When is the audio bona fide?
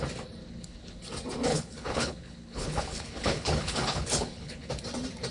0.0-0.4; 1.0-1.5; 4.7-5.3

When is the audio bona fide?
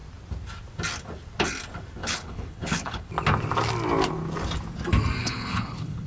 0.0-2.0; 3.1-5.2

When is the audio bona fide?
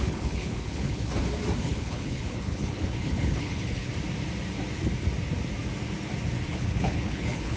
1.1-1.6; 3.9-6.5